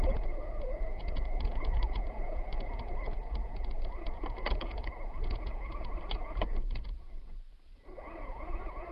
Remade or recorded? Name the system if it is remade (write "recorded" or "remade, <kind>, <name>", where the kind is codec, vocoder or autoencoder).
remade, vocoder, Vocos